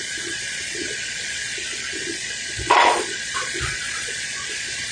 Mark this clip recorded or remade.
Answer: remade